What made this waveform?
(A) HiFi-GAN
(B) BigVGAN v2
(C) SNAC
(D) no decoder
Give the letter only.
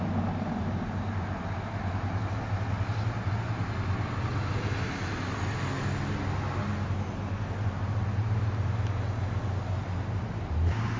D